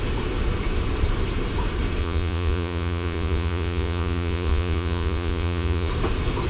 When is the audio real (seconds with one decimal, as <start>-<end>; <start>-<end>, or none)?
0.0-2.0; 5.9-6.5